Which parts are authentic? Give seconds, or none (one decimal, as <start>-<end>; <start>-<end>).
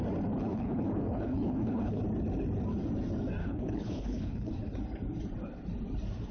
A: 0.0-0.4; 2.0-3.4; 4.5-6.3